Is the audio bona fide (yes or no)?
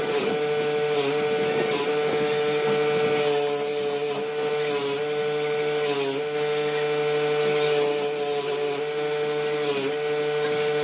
yes